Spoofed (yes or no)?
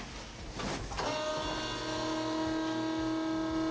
no